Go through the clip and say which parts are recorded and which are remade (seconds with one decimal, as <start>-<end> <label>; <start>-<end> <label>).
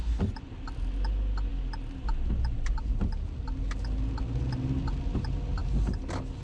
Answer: 0.0-6.4 recorded